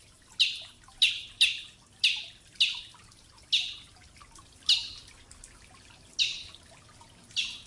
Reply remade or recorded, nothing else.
recorded